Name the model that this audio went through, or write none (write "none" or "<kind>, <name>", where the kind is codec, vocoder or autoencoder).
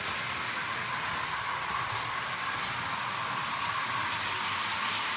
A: none